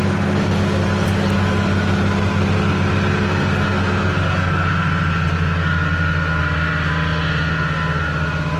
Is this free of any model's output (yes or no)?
yes